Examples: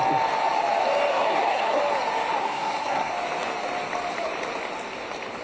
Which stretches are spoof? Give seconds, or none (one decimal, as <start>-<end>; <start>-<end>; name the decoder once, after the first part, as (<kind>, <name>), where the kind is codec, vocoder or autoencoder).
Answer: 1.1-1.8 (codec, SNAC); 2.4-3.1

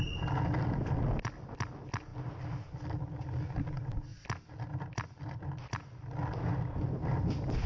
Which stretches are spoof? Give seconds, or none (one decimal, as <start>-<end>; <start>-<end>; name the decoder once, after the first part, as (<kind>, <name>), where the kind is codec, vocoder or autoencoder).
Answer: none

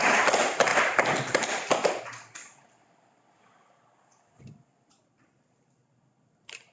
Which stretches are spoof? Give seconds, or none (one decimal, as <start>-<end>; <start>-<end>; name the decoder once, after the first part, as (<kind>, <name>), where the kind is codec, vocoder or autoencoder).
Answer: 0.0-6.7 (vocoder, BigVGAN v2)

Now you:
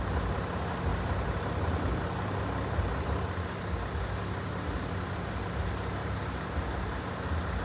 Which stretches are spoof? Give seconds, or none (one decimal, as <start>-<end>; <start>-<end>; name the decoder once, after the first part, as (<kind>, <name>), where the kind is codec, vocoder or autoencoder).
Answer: 6.0-7.0 (vocoder, BigVGAN v2)